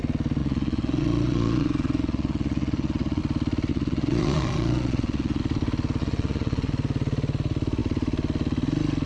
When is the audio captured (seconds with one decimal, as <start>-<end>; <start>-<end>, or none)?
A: 0.0-0.4; 3.2-3.7; 5.4-6.0; 6.7-9.1